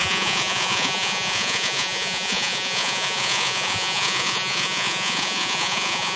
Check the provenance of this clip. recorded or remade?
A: remade